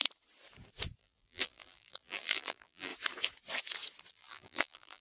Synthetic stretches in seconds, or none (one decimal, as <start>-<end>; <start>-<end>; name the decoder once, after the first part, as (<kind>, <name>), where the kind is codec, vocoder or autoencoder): 1.0-2.9 (vocoder, BigVGAN v2); 4.1-5.0